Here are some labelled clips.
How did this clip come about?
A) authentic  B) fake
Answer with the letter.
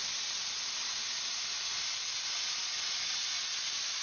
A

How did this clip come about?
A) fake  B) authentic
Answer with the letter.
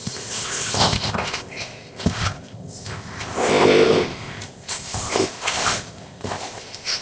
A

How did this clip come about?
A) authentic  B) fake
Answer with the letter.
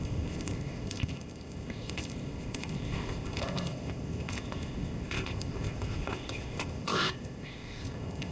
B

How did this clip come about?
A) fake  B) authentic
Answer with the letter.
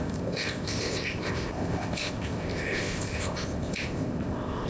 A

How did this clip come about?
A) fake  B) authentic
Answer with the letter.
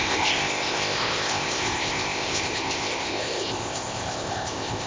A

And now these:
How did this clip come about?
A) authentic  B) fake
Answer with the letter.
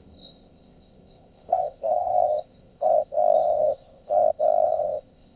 B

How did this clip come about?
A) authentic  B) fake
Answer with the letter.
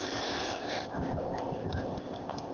B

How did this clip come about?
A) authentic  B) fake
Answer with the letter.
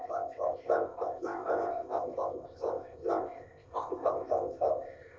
B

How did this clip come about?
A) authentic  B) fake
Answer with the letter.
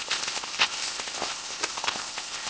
B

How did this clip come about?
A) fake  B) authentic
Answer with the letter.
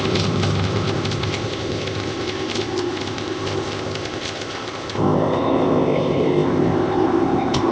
A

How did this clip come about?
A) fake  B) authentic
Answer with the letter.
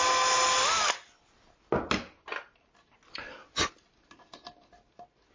B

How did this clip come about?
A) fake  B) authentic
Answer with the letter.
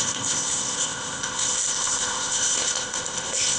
A